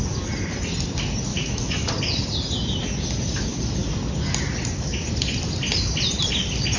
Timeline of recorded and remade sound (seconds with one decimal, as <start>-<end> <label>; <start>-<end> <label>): 0.0-1.3 recorded; 1.3-1.9 remade; 1.9-6.8 recorded